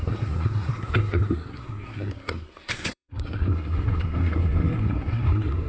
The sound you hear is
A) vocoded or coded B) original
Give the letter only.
A